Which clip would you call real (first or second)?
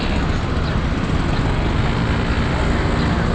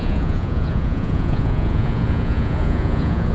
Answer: first